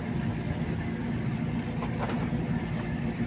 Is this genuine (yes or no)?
yes